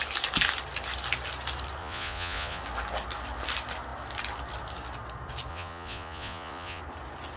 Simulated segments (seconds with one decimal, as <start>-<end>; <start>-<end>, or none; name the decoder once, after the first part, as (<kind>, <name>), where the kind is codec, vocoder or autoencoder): 1.8-2.6 (vocoder, Vocos); 5.5-6.8